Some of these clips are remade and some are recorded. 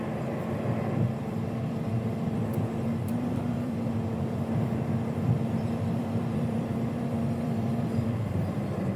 remade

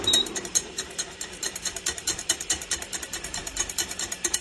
remade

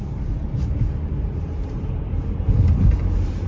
remade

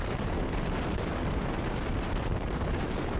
remade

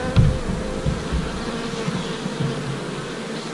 recorded